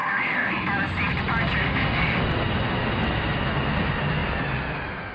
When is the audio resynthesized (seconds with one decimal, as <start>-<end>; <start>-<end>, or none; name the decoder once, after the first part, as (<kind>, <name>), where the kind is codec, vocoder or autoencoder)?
0.0-0.5 (autoencoder, DAC-VAE); 1.6-2.2